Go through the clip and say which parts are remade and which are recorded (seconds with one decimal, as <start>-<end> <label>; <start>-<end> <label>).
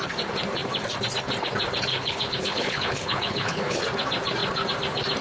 0.0-1.9 recorded; 1.9-3.8 remade; 3.8-5.2 recorded